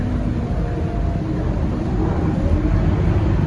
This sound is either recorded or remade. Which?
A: recorded